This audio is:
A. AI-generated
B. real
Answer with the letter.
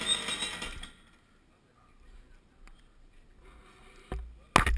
B